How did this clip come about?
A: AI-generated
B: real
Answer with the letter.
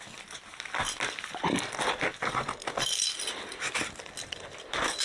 B